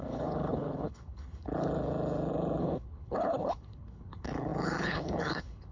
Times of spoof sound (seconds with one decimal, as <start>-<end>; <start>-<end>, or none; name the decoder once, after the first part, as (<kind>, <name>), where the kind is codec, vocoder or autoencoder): 0.0-1.5 (codec, HILCodec); 2.6-5.7